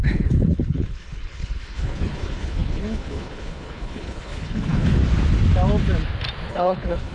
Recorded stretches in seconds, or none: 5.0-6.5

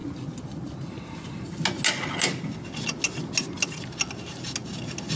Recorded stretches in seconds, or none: 0.0-5.2

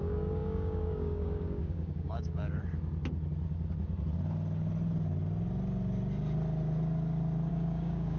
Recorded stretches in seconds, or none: 2.6-7.5

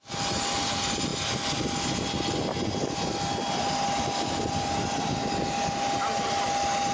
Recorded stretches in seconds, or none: 0.0-6.9

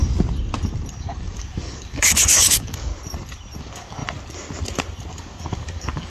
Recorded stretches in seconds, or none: 0.0-1.0; 2.9-3.6; 4.0-5.1

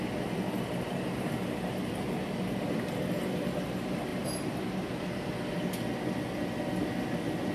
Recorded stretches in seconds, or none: 0.0-7.5